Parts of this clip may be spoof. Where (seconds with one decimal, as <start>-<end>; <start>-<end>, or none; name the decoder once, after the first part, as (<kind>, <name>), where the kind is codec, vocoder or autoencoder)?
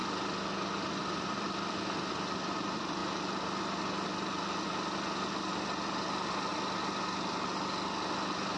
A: 0.9-3.0 (vocoder, BigVGAN v2); 5.5-6.5